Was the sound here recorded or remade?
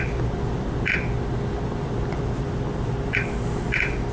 recorded